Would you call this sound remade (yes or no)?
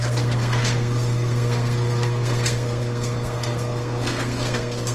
yes